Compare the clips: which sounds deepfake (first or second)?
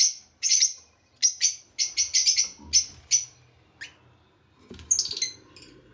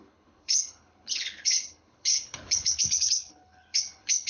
second